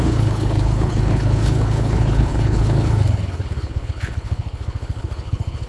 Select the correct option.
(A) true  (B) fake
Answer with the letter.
B